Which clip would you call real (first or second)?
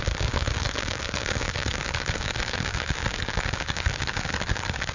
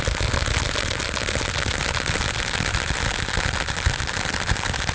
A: second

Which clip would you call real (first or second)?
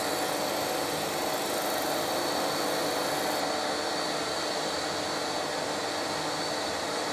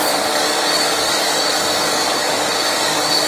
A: first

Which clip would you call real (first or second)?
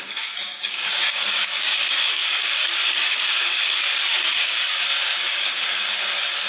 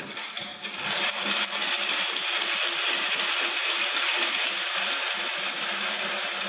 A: second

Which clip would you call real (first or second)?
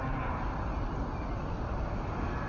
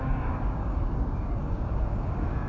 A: first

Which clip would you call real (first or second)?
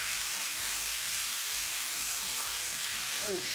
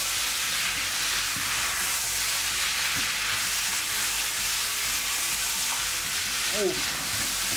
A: second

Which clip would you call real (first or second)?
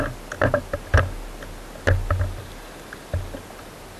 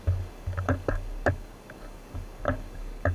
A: first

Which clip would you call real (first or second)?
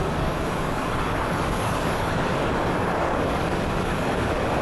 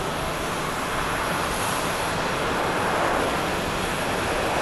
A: second